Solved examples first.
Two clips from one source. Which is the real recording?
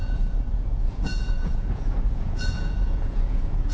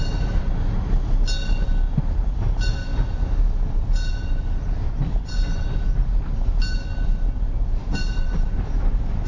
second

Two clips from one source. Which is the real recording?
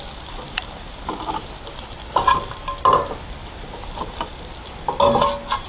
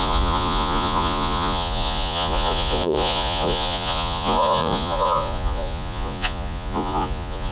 first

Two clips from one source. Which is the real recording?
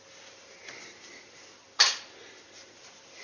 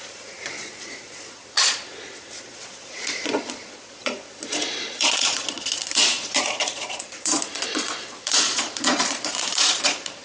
first